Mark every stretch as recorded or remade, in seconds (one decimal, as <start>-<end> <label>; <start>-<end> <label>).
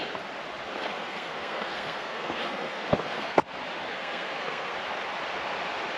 0.0-0.8 recorded; 0.8-3.4 remade; 3.4-3.9 recorded; 3.9-4.7 remade; 4.7-6.0 recorded